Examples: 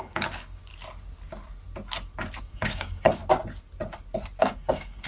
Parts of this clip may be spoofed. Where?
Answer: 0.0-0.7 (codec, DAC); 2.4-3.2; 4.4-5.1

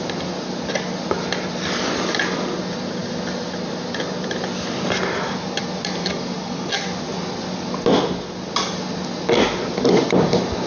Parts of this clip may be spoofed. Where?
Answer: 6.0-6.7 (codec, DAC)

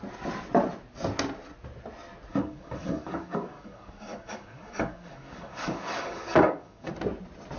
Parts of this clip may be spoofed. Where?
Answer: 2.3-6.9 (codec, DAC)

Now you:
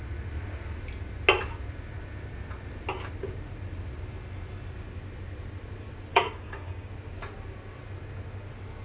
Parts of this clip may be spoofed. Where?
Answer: 6.1-6.9 (codec, DAC)

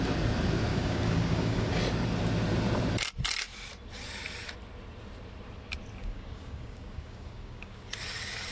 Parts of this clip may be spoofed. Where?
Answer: 0.7-1.8 (codec, DAC); 6.0-8.0